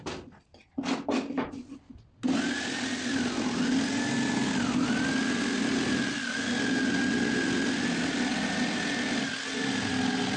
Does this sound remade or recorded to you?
recorded